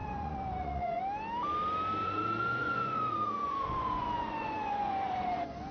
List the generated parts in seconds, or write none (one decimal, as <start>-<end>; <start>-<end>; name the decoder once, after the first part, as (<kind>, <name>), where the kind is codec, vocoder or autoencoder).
0.0-1.0 (vocoder, Vocos); 2.0-5.7